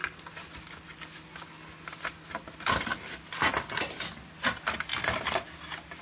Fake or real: real